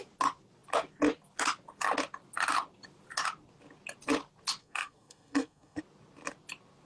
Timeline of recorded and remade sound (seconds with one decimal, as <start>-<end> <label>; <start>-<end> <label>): 0.0-4.6 recorded; 4.6-5.8 remade; 5.8-6.9 recorded